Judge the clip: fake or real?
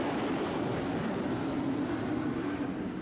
real